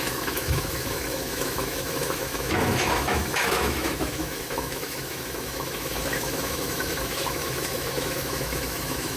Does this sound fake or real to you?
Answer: fake